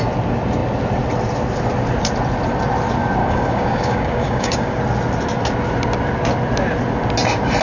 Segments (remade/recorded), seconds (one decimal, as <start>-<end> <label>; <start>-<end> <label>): 0.0-3.2 recorded; 3.2-4.8 remade; 4.8-7.6 recorded